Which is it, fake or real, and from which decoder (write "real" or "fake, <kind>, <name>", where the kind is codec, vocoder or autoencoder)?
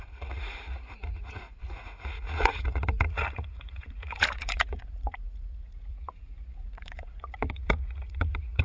fake, vocoder, Vocos